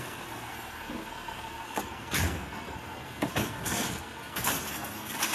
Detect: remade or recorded remade